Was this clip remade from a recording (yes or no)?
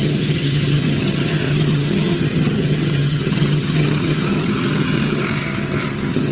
yes